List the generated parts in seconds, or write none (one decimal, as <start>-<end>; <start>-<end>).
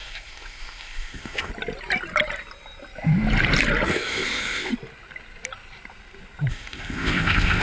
0.0-1.5; 3.9-4.7; 6.5-7.6